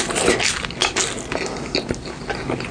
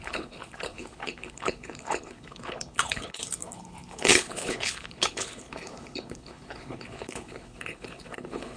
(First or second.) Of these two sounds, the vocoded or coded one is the second